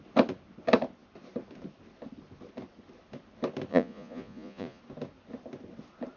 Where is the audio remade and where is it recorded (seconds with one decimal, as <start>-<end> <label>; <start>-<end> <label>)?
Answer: 0.0-3.7 recorded; 3.7-4.8 remade; 4.8-6.2 recorded